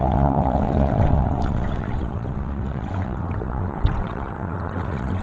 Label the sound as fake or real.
fake